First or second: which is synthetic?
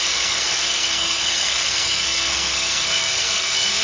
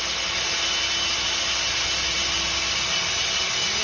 first